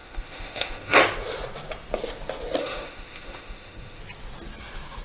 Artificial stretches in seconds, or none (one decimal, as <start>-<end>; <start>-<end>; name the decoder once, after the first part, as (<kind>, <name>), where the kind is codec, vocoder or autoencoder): 0.0-1.0 (autoencoder, DAC-VAE); 2.6-4.0